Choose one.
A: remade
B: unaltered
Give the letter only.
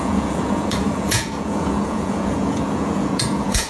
A